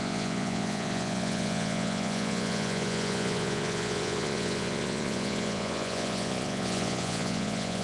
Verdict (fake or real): fake